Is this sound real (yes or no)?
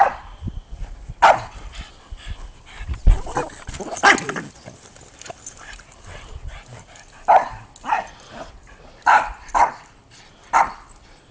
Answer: yes